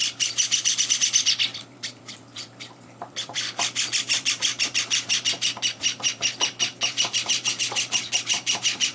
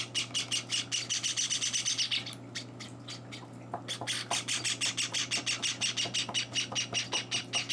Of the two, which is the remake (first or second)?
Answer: first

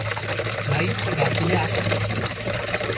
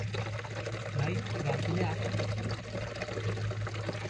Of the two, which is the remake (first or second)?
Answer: first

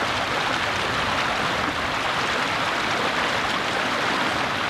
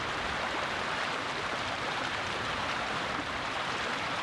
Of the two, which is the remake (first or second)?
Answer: second